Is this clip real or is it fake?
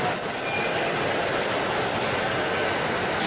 real